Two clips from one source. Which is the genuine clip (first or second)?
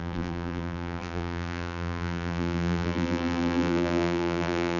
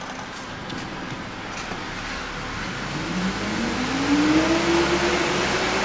second